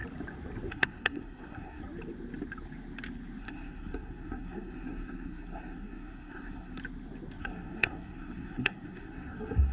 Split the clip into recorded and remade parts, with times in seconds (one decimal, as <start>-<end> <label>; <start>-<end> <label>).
0.0-0.7 recorded; 0.7-1.8 remade; 1.8-3.4 recorded; 3.4-6.8 remade; 6.8-7.4 recorded; 7.4-9.7 remade